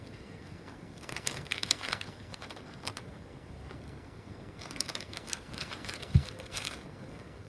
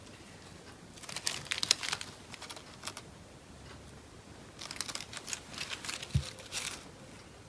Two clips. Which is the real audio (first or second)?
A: second